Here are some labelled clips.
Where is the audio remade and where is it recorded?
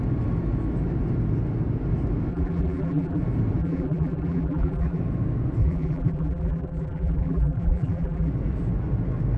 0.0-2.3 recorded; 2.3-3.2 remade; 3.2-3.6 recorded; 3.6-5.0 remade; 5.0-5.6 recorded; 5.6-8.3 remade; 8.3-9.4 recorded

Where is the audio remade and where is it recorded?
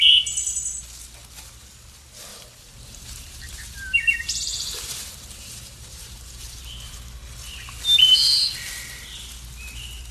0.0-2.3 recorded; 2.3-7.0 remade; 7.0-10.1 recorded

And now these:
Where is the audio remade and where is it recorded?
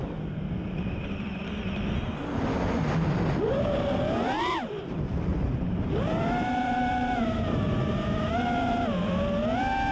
0.0-5.3 recorded; 5.3-9.1 remade; 9.1-9.9 recorded